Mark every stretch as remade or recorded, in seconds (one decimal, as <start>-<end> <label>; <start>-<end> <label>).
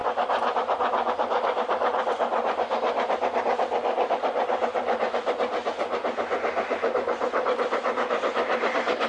0.0-9.1 recorded